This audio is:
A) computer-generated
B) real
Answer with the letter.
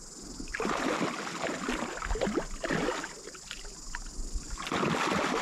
B